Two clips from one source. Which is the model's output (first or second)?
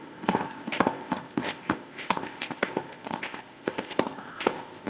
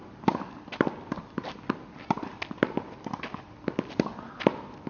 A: first